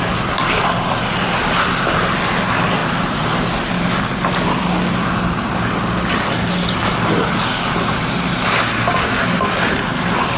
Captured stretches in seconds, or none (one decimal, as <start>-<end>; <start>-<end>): 0.0-10.4

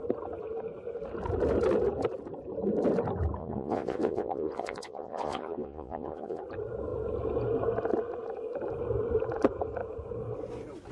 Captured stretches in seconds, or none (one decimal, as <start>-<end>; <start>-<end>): 0.0-3.4; 6.4-10.9